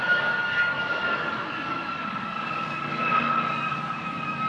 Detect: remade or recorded remade